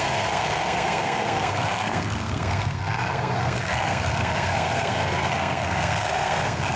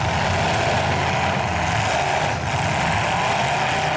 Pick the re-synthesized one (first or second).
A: first